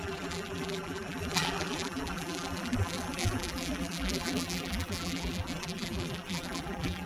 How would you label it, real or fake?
fake